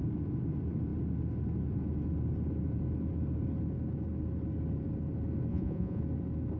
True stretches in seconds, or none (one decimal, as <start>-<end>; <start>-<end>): 0.0-5.5; 6.0-6.6